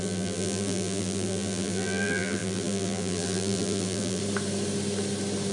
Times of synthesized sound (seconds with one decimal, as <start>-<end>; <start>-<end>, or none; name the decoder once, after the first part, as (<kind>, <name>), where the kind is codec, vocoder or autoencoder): 0.0-4.2 (vocoder, BigVGAN v2)